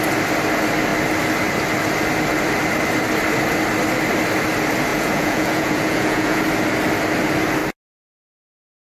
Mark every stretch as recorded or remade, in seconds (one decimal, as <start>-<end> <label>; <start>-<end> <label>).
0.0-4.9 recorded; 4.9-6.4 remade; 6.4-8.9 recorded